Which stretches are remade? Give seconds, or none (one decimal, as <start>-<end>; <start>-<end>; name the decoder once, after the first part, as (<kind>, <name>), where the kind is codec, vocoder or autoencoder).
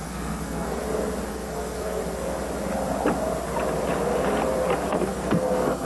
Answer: 0.0-0.8 (codec, SNAC); 1.3-2.0; 4.9-5.8